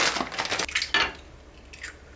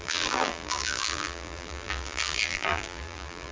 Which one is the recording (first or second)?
first